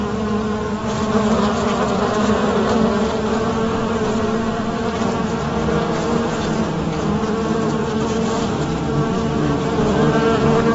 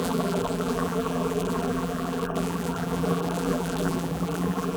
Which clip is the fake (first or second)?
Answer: second